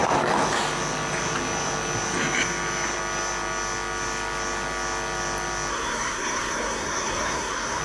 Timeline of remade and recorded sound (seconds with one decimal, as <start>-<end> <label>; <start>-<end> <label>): 0.0-5.7 recorded; 5.7-7.8 remade